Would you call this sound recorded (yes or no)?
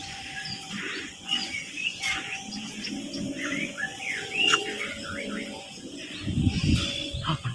no